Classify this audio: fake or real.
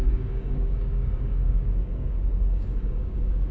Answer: fake